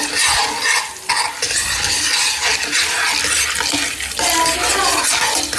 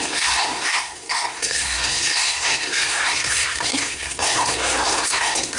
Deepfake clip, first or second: second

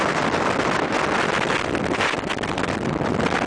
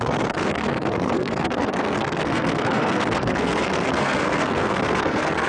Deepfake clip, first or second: second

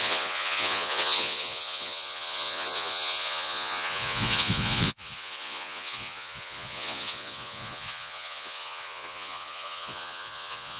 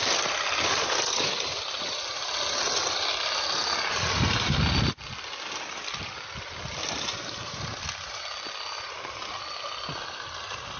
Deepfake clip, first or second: first